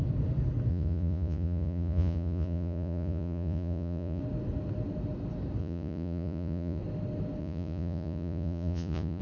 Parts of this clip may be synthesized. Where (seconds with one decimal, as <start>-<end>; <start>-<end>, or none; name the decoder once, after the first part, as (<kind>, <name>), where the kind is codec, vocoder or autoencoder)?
0.7-4.2 (vocoder, Vocos); 5.6-6.8; 7.4-9.2